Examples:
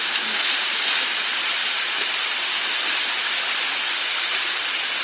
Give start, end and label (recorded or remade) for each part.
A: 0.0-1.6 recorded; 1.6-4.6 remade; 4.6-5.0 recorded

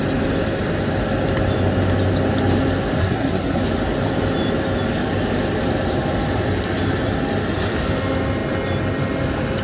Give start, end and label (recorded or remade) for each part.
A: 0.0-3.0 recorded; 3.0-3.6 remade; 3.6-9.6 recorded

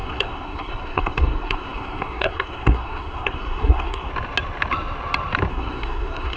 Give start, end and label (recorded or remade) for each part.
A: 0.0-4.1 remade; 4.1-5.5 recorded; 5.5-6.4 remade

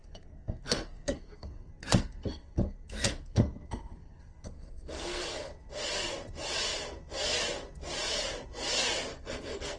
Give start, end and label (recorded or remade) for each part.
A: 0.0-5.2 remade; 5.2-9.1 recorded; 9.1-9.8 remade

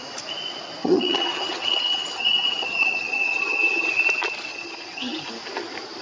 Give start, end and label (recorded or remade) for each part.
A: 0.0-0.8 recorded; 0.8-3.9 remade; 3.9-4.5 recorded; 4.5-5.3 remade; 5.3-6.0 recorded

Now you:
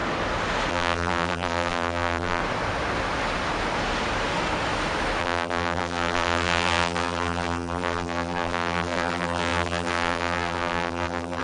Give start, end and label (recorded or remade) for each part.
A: 0.0-0.7 recorded; 0.7-2.4 remade; 2.4-5.2 recorded; 5.2-11.4 remade

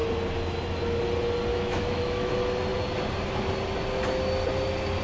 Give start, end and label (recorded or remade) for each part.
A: 0.0-1.5 recorded; 1.5-2.3 remade; 2.3-5.0 recorded

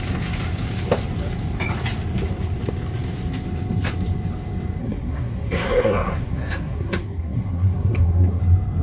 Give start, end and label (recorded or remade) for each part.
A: 0.0-4.8 recorded; 4.8-8.4 remade; 8.4-8.8 recorded